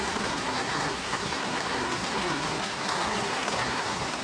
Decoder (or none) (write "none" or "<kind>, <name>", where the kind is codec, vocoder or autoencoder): codec, SNAC